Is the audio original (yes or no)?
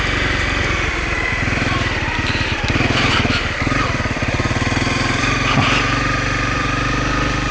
no